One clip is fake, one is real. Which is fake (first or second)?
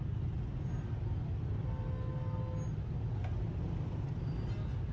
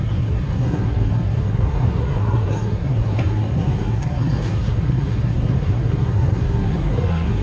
second